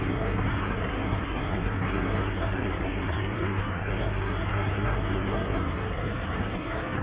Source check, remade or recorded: remade